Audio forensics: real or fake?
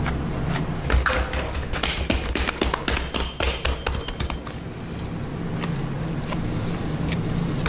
real